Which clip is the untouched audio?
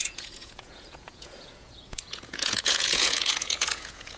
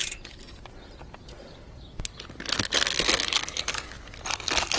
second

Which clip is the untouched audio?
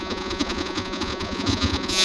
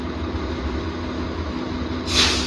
second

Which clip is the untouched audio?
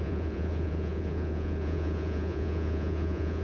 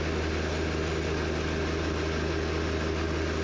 second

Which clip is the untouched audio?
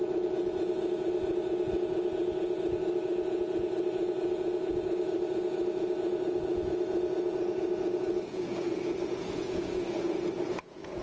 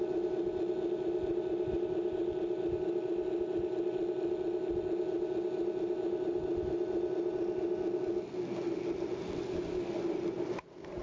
second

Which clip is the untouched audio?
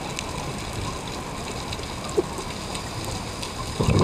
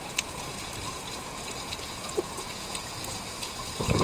first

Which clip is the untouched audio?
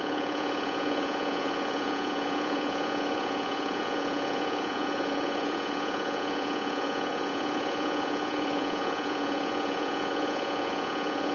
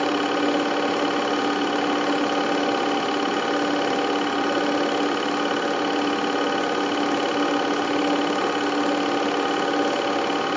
second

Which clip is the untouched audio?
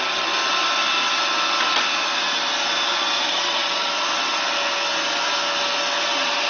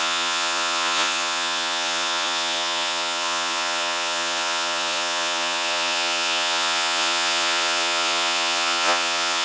first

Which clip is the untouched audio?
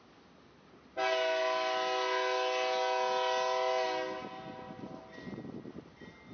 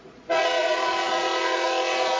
first